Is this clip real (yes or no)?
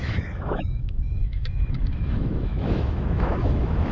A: no